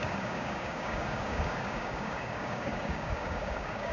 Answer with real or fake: fake